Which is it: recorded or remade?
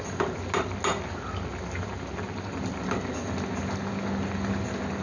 recorded